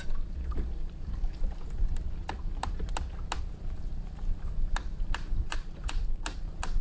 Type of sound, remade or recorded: recorded